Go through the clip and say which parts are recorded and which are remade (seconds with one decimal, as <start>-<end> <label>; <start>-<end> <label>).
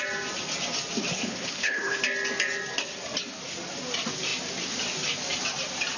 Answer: 0.0-1.1 recorded; 1.1-2.0 remade; 2.0-6.0 recorded